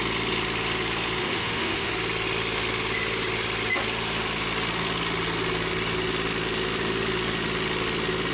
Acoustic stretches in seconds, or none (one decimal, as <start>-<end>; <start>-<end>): 0.0-1.2; 1.9-8.3